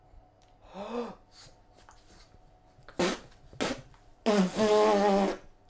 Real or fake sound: real